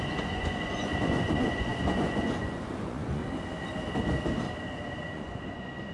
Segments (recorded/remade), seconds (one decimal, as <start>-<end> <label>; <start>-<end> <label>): 0.0-3.2 remade; 3.2-4.6 recorded; 4.6-5.9 remade